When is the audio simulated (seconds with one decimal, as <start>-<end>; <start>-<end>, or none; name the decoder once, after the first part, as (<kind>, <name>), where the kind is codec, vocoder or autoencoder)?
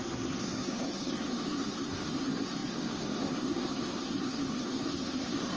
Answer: 0.0-5.6 (codec, SNAC)